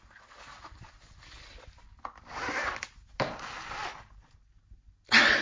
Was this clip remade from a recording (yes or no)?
no